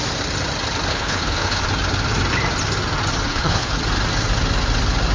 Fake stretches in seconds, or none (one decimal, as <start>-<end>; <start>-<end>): 0.9-1.6; 3.3-3.8